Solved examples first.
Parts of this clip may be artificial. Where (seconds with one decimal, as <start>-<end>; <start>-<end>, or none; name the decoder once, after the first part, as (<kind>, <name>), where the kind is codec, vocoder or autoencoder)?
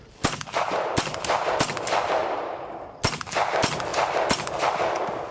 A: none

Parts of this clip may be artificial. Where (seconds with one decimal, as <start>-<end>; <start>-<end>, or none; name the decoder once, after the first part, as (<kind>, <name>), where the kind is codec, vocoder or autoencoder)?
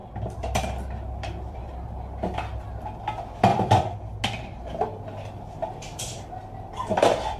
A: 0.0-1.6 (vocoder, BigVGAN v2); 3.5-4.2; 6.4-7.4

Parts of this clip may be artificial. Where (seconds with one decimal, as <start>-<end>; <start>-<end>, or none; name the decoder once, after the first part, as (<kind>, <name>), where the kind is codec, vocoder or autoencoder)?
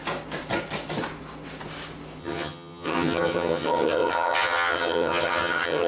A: 2.2-5.9 (vocoder, HiFi-GAN)